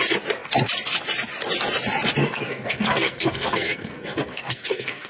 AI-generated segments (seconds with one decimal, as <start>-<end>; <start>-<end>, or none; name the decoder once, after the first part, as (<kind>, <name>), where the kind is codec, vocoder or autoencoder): 2.2-5.1 (codec, SNAC)